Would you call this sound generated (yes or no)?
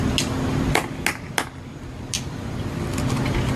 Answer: no